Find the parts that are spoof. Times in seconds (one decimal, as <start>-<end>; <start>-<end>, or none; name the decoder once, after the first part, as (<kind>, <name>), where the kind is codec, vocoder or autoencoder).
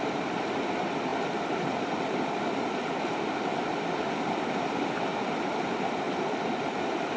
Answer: none